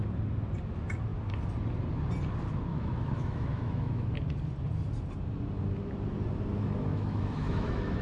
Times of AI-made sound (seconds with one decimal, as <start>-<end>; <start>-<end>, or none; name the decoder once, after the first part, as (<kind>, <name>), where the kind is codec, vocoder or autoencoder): 2.7-4.2 (autoencoder, DAC-VAE); 6.9-8.0